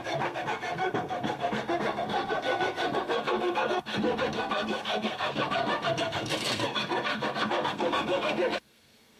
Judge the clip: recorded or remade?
remade